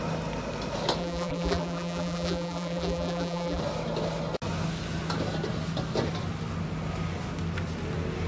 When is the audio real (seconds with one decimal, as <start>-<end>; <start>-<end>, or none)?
0.0-1.0; 3.6-8.3